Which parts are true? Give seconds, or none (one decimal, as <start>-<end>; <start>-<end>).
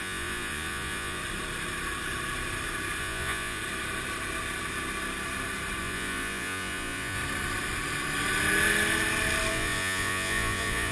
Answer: 1.2-3.0; 3.6-5.8; 7.2-9.5